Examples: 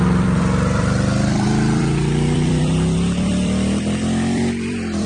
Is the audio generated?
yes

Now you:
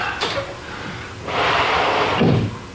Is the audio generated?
yes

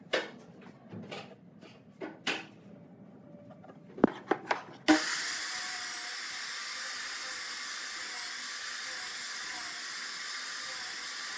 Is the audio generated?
no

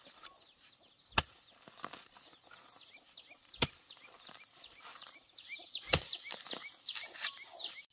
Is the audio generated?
no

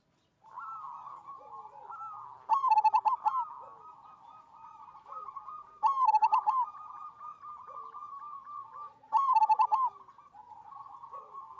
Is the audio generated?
no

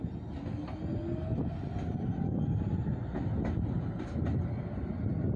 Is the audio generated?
no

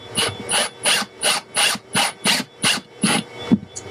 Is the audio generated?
yes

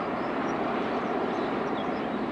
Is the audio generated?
yes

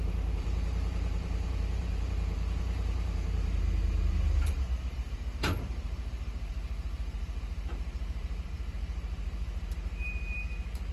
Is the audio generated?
yes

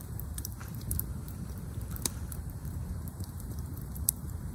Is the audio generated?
yes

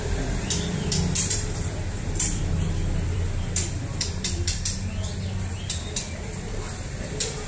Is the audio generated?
yes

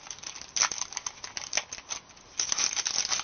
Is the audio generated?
no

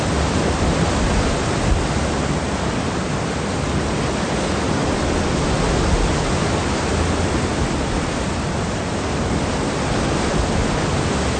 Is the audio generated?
no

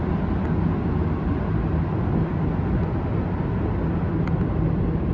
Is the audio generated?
no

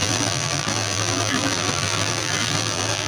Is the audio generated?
yes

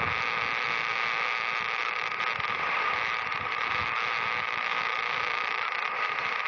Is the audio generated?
yes